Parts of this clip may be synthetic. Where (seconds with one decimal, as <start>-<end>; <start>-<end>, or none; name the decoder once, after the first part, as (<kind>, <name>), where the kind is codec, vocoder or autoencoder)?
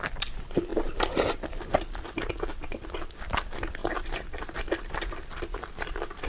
3.8-4.6 (vocoder, BigVGAN v2)